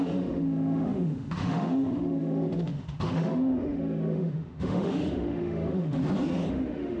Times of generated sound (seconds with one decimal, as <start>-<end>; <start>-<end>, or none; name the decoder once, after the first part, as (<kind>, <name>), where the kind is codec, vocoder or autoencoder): 0.0-6.0 (autoencoder, DAC-VAE); 6.5-7.0